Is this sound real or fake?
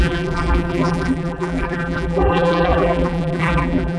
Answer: fake